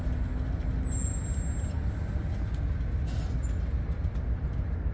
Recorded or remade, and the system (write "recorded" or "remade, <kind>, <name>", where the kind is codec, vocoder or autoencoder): recorded